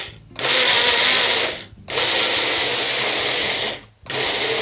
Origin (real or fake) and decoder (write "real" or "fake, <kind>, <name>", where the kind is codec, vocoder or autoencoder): real